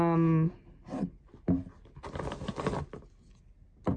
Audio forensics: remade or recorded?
recorded